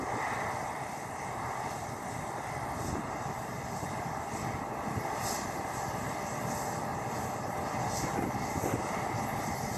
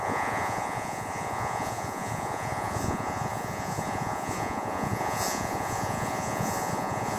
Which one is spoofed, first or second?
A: second